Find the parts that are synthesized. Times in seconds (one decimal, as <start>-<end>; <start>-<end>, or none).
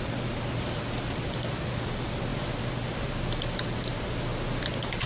none